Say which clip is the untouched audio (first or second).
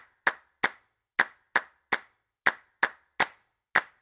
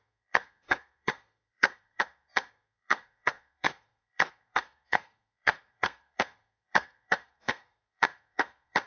first